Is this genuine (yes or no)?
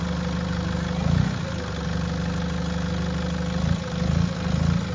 yes